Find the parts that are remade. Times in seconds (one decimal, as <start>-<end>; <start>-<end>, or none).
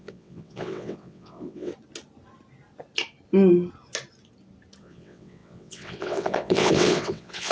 0.0-1.7; 4.8-7.5